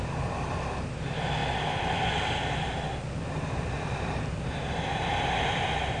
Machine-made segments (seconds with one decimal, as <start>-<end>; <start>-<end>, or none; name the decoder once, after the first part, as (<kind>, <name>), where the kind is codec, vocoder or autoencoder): none